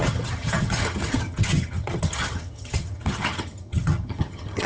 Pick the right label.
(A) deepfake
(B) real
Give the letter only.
A